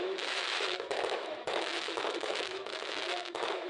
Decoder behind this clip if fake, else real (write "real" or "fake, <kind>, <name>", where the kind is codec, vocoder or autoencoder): fake, autoencoder, DAC-VAE